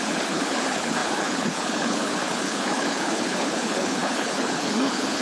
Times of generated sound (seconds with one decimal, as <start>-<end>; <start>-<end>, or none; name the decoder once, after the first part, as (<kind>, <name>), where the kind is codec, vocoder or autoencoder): 0.0-5.2 (codec, HILCodec)